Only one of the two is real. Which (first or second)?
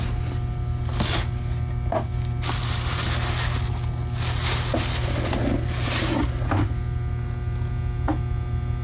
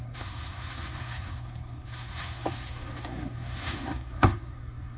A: first